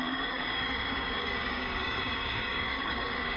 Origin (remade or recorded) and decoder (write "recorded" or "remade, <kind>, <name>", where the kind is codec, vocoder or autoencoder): remade, codec, DAC